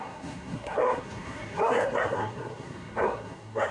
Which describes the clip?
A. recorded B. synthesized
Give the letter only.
B